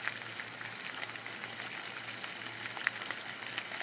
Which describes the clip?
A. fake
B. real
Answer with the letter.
B